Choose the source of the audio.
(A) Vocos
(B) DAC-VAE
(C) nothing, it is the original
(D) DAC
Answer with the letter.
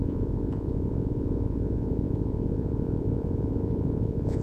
A